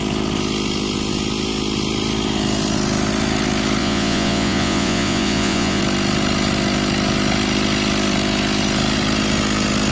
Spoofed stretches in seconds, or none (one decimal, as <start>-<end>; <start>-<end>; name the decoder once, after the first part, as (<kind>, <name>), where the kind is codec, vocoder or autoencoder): 3.8-5.8 (vocoder, Vocos)